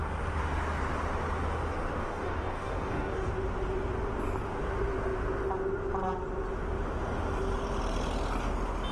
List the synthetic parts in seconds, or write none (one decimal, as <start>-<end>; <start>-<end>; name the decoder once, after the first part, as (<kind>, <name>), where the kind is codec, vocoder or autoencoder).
2.0-3.3 (codec, DAC)